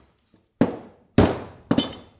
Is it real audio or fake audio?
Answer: real